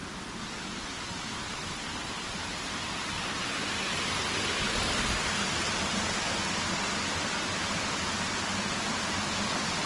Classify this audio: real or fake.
real